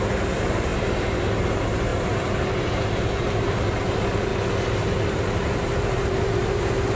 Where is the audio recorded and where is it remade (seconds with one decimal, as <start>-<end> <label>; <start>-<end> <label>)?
0.0-0.7 remade; 0.7-1.3 recorded; 1.3-4.3 remade; 4.3-5.0 recorded; 5.0-7.0 remade